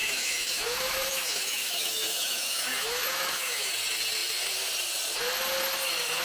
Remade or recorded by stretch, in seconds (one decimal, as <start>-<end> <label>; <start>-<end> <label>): 0.0-3.7 remade; 3.7-6.2 recorded